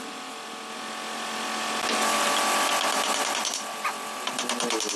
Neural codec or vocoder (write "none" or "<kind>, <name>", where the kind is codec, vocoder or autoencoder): none